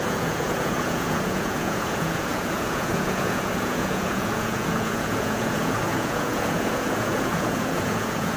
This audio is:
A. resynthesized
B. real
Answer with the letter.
A